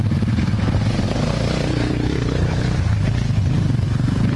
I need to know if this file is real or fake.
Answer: real